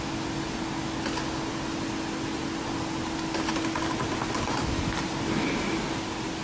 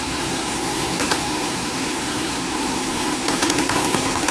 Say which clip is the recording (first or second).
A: first